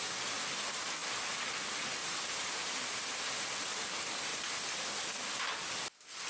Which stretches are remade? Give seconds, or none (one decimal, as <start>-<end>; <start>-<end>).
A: 2.0-3.0; 4.3-5.1